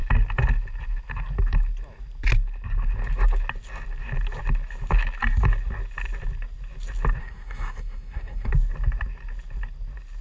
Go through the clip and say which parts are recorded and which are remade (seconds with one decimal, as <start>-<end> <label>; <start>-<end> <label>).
0.0-7.2 recorded; 7.2-8.5 remade; 8.5-10.2 recorded